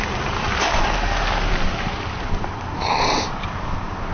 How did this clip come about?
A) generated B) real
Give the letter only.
B